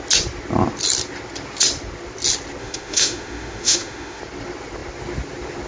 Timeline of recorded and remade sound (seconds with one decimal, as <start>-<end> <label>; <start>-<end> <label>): 0.0-2.6 recorded; 2.6-4.2 remade; 4.2-5.7 recorded